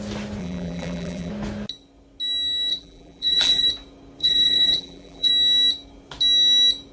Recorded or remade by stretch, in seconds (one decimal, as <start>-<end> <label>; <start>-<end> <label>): 0.0-0.4 recorded; 0.4-1.3 remade; 1.3-2.7 recorded; 2.7-3.7 remade; 3.7-4.2 recorded; 4.2-5.3 remade; 5.3-6.9 recorded